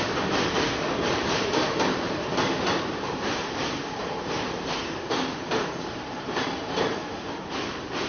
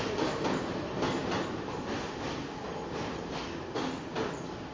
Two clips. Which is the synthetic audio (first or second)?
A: first